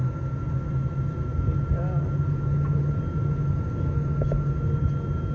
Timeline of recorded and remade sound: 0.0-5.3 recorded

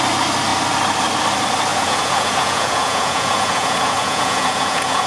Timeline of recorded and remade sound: 0.0-1.7 recorded; 1.7-5.1 remade

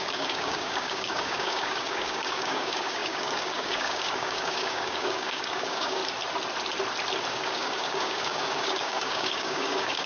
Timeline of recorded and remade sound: 0.0-6.0 remade; 6.0-7.3 recorded; 7.3-10.1 remade

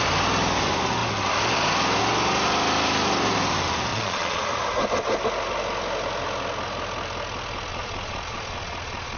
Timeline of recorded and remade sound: 0.0-3.9 recorded; 3.9-4.4 remade; 4.4-7.7 recorded; 7.7-9.2 remade